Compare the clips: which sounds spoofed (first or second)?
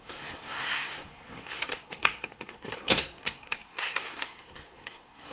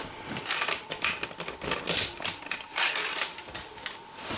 first